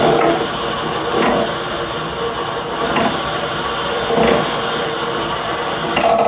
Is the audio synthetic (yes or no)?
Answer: no